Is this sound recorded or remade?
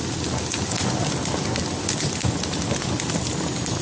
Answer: recorded